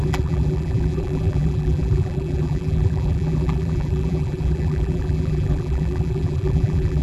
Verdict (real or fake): fake